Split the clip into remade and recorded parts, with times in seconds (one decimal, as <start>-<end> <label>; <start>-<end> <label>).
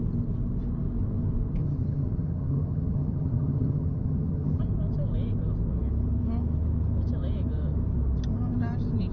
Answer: 0.0-1.6 recorded; 1.6-4.6 remade; 4.6-9.1 recorded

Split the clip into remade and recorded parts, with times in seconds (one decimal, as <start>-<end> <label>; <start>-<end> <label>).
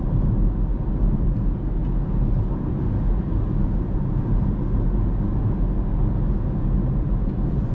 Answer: 0.0-7.7 recorded